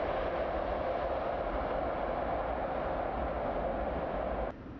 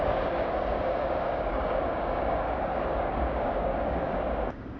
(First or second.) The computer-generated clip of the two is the second